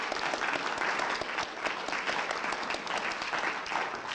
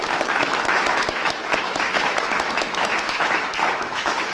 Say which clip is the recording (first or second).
first